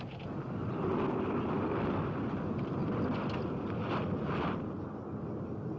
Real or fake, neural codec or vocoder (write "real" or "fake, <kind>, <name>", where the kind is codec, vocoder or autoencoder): real